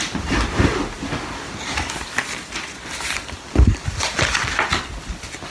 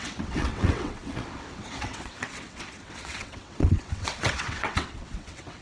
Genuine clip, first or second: first